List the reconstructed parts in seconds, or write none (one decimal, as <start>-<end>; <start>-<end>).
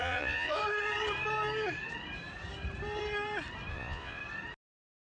0.0-0.6; 3.7-4.2